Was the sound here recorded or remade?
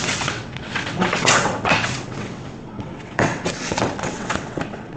remade